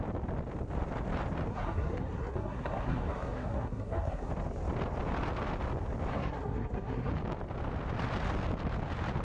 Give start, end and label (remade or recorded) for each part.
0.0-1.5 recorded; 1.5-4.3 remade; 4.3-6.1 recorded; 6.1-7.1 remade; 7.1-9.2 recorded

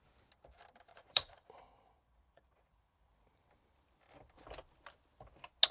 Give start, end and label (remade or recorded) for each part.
0.0-0.9 recorded; 0.9-3.5 remade; 3.5-5.7 recorded

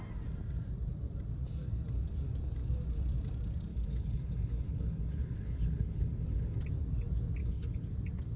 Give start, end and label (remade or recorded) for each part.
0.0-3.7 recorded; 3.7-6.6 remade; 6.6-7.4 recorded; 7.4-7.9 remade; 7.9-8.4 recorded

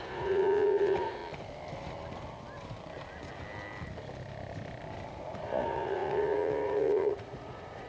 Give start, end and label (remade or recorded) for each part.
0.0-1.2 remade; 1.2-5.2 recorded; 5.2-7.9 remade

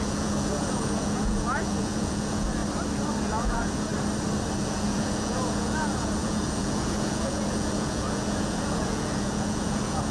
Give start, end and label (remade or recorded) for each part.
0.0-2.6 remade; 2.6-3.2 recorded; 3.2-3.9 remade; 3.9-4.5 recorded; 4.5-10.1 remade